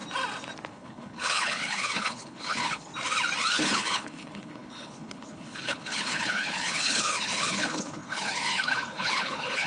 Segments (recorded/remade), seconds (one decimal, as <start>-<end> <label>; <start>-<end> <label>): 0.0-0.7 recorded; 0.7-2.9 remade; 2.9-3.5 recorded; 3.5-9.7 remade